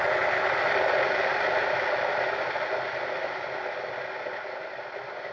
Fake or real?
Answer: real